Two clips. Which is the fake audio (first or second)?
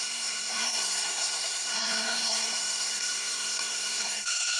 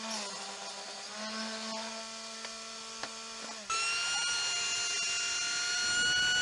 first